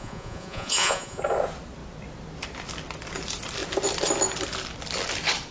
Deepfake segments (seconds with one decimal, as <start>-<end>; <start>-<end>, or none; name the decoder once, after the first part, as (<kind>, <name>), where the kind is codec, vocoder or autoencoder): 0.0-1.2 (vocoder, Vocos)